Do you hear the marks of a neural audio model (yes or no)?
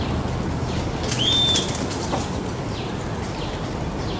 no